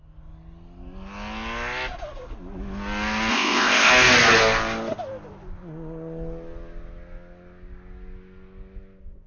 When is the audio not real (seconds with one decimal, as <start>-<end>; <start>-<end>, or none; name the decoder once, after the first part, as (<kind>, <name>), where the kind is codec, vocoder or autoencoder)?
3.3-3.9 (codec, ZipCodec)